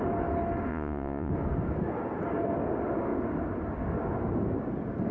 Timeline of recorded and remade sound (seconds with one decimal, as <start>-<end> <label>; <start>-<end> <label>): 0.0-0.7 recorded; 0.7-1.3 remade; 1.3-5.1 recorded